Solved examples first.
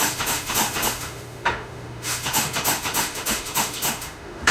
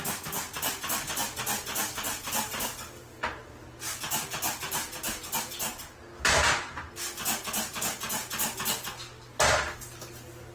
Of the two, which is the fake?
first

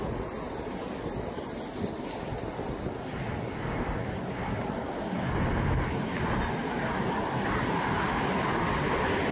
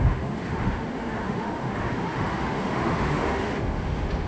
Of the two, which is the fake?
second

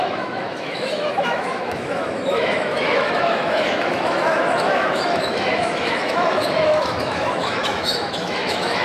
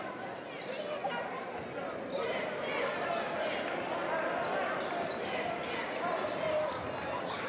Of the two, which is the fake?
first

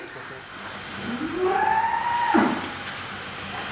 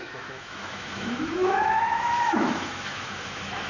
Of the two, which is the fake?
second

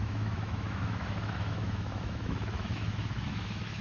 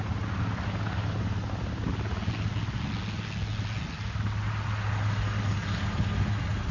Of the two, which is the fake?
first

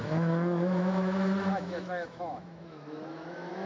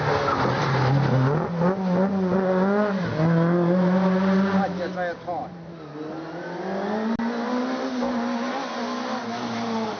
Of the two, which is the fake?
first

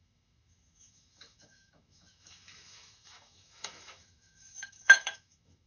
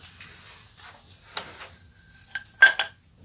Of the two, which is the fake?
first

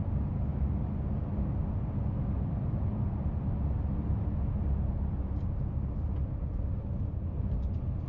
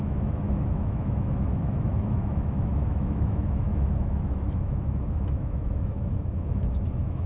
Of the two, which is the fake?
second